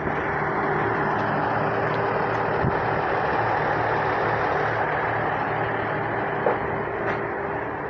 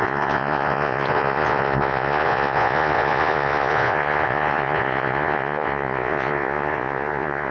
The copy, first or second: second